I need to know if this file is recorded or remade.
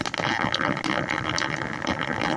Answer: recorded